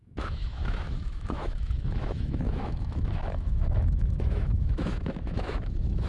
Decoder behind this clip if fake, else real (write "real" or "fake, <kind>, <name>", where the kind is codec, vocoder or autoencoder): fake, autoencoder, DAC-VAE